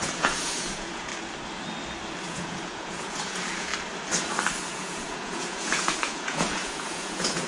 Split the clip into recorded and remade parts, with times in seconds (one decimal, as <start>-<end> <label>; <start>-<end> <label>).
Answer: 0.0-1.1 remade; 1.1-2.2 recorded; 2.2-3.7 remade; 3.7-4.7 recorded; 4.7-7.5 remade